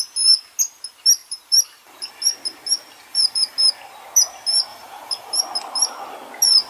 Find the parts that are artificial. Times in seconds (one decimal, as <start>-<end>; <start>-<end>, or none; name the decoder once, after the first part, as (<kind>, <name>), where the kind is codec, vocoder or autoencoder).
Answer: 1.2-2.1 (vocoder, BigVGAN v2); 3.1-3.7; 4.7-5.4